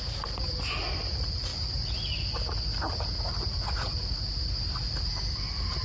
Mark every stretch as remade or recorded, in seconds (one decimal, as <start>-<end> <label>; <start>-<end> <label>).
0.0-5.8 recorded